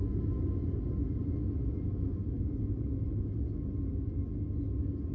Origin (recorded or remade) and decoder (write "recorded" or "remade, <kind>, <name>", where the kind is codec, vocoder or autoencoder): recorded